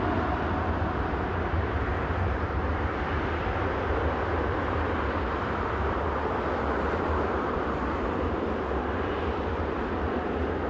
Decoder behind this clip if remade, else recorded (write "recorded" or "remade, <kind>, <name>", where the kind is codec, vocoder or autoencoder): remade, vocoder, BigVGAN v2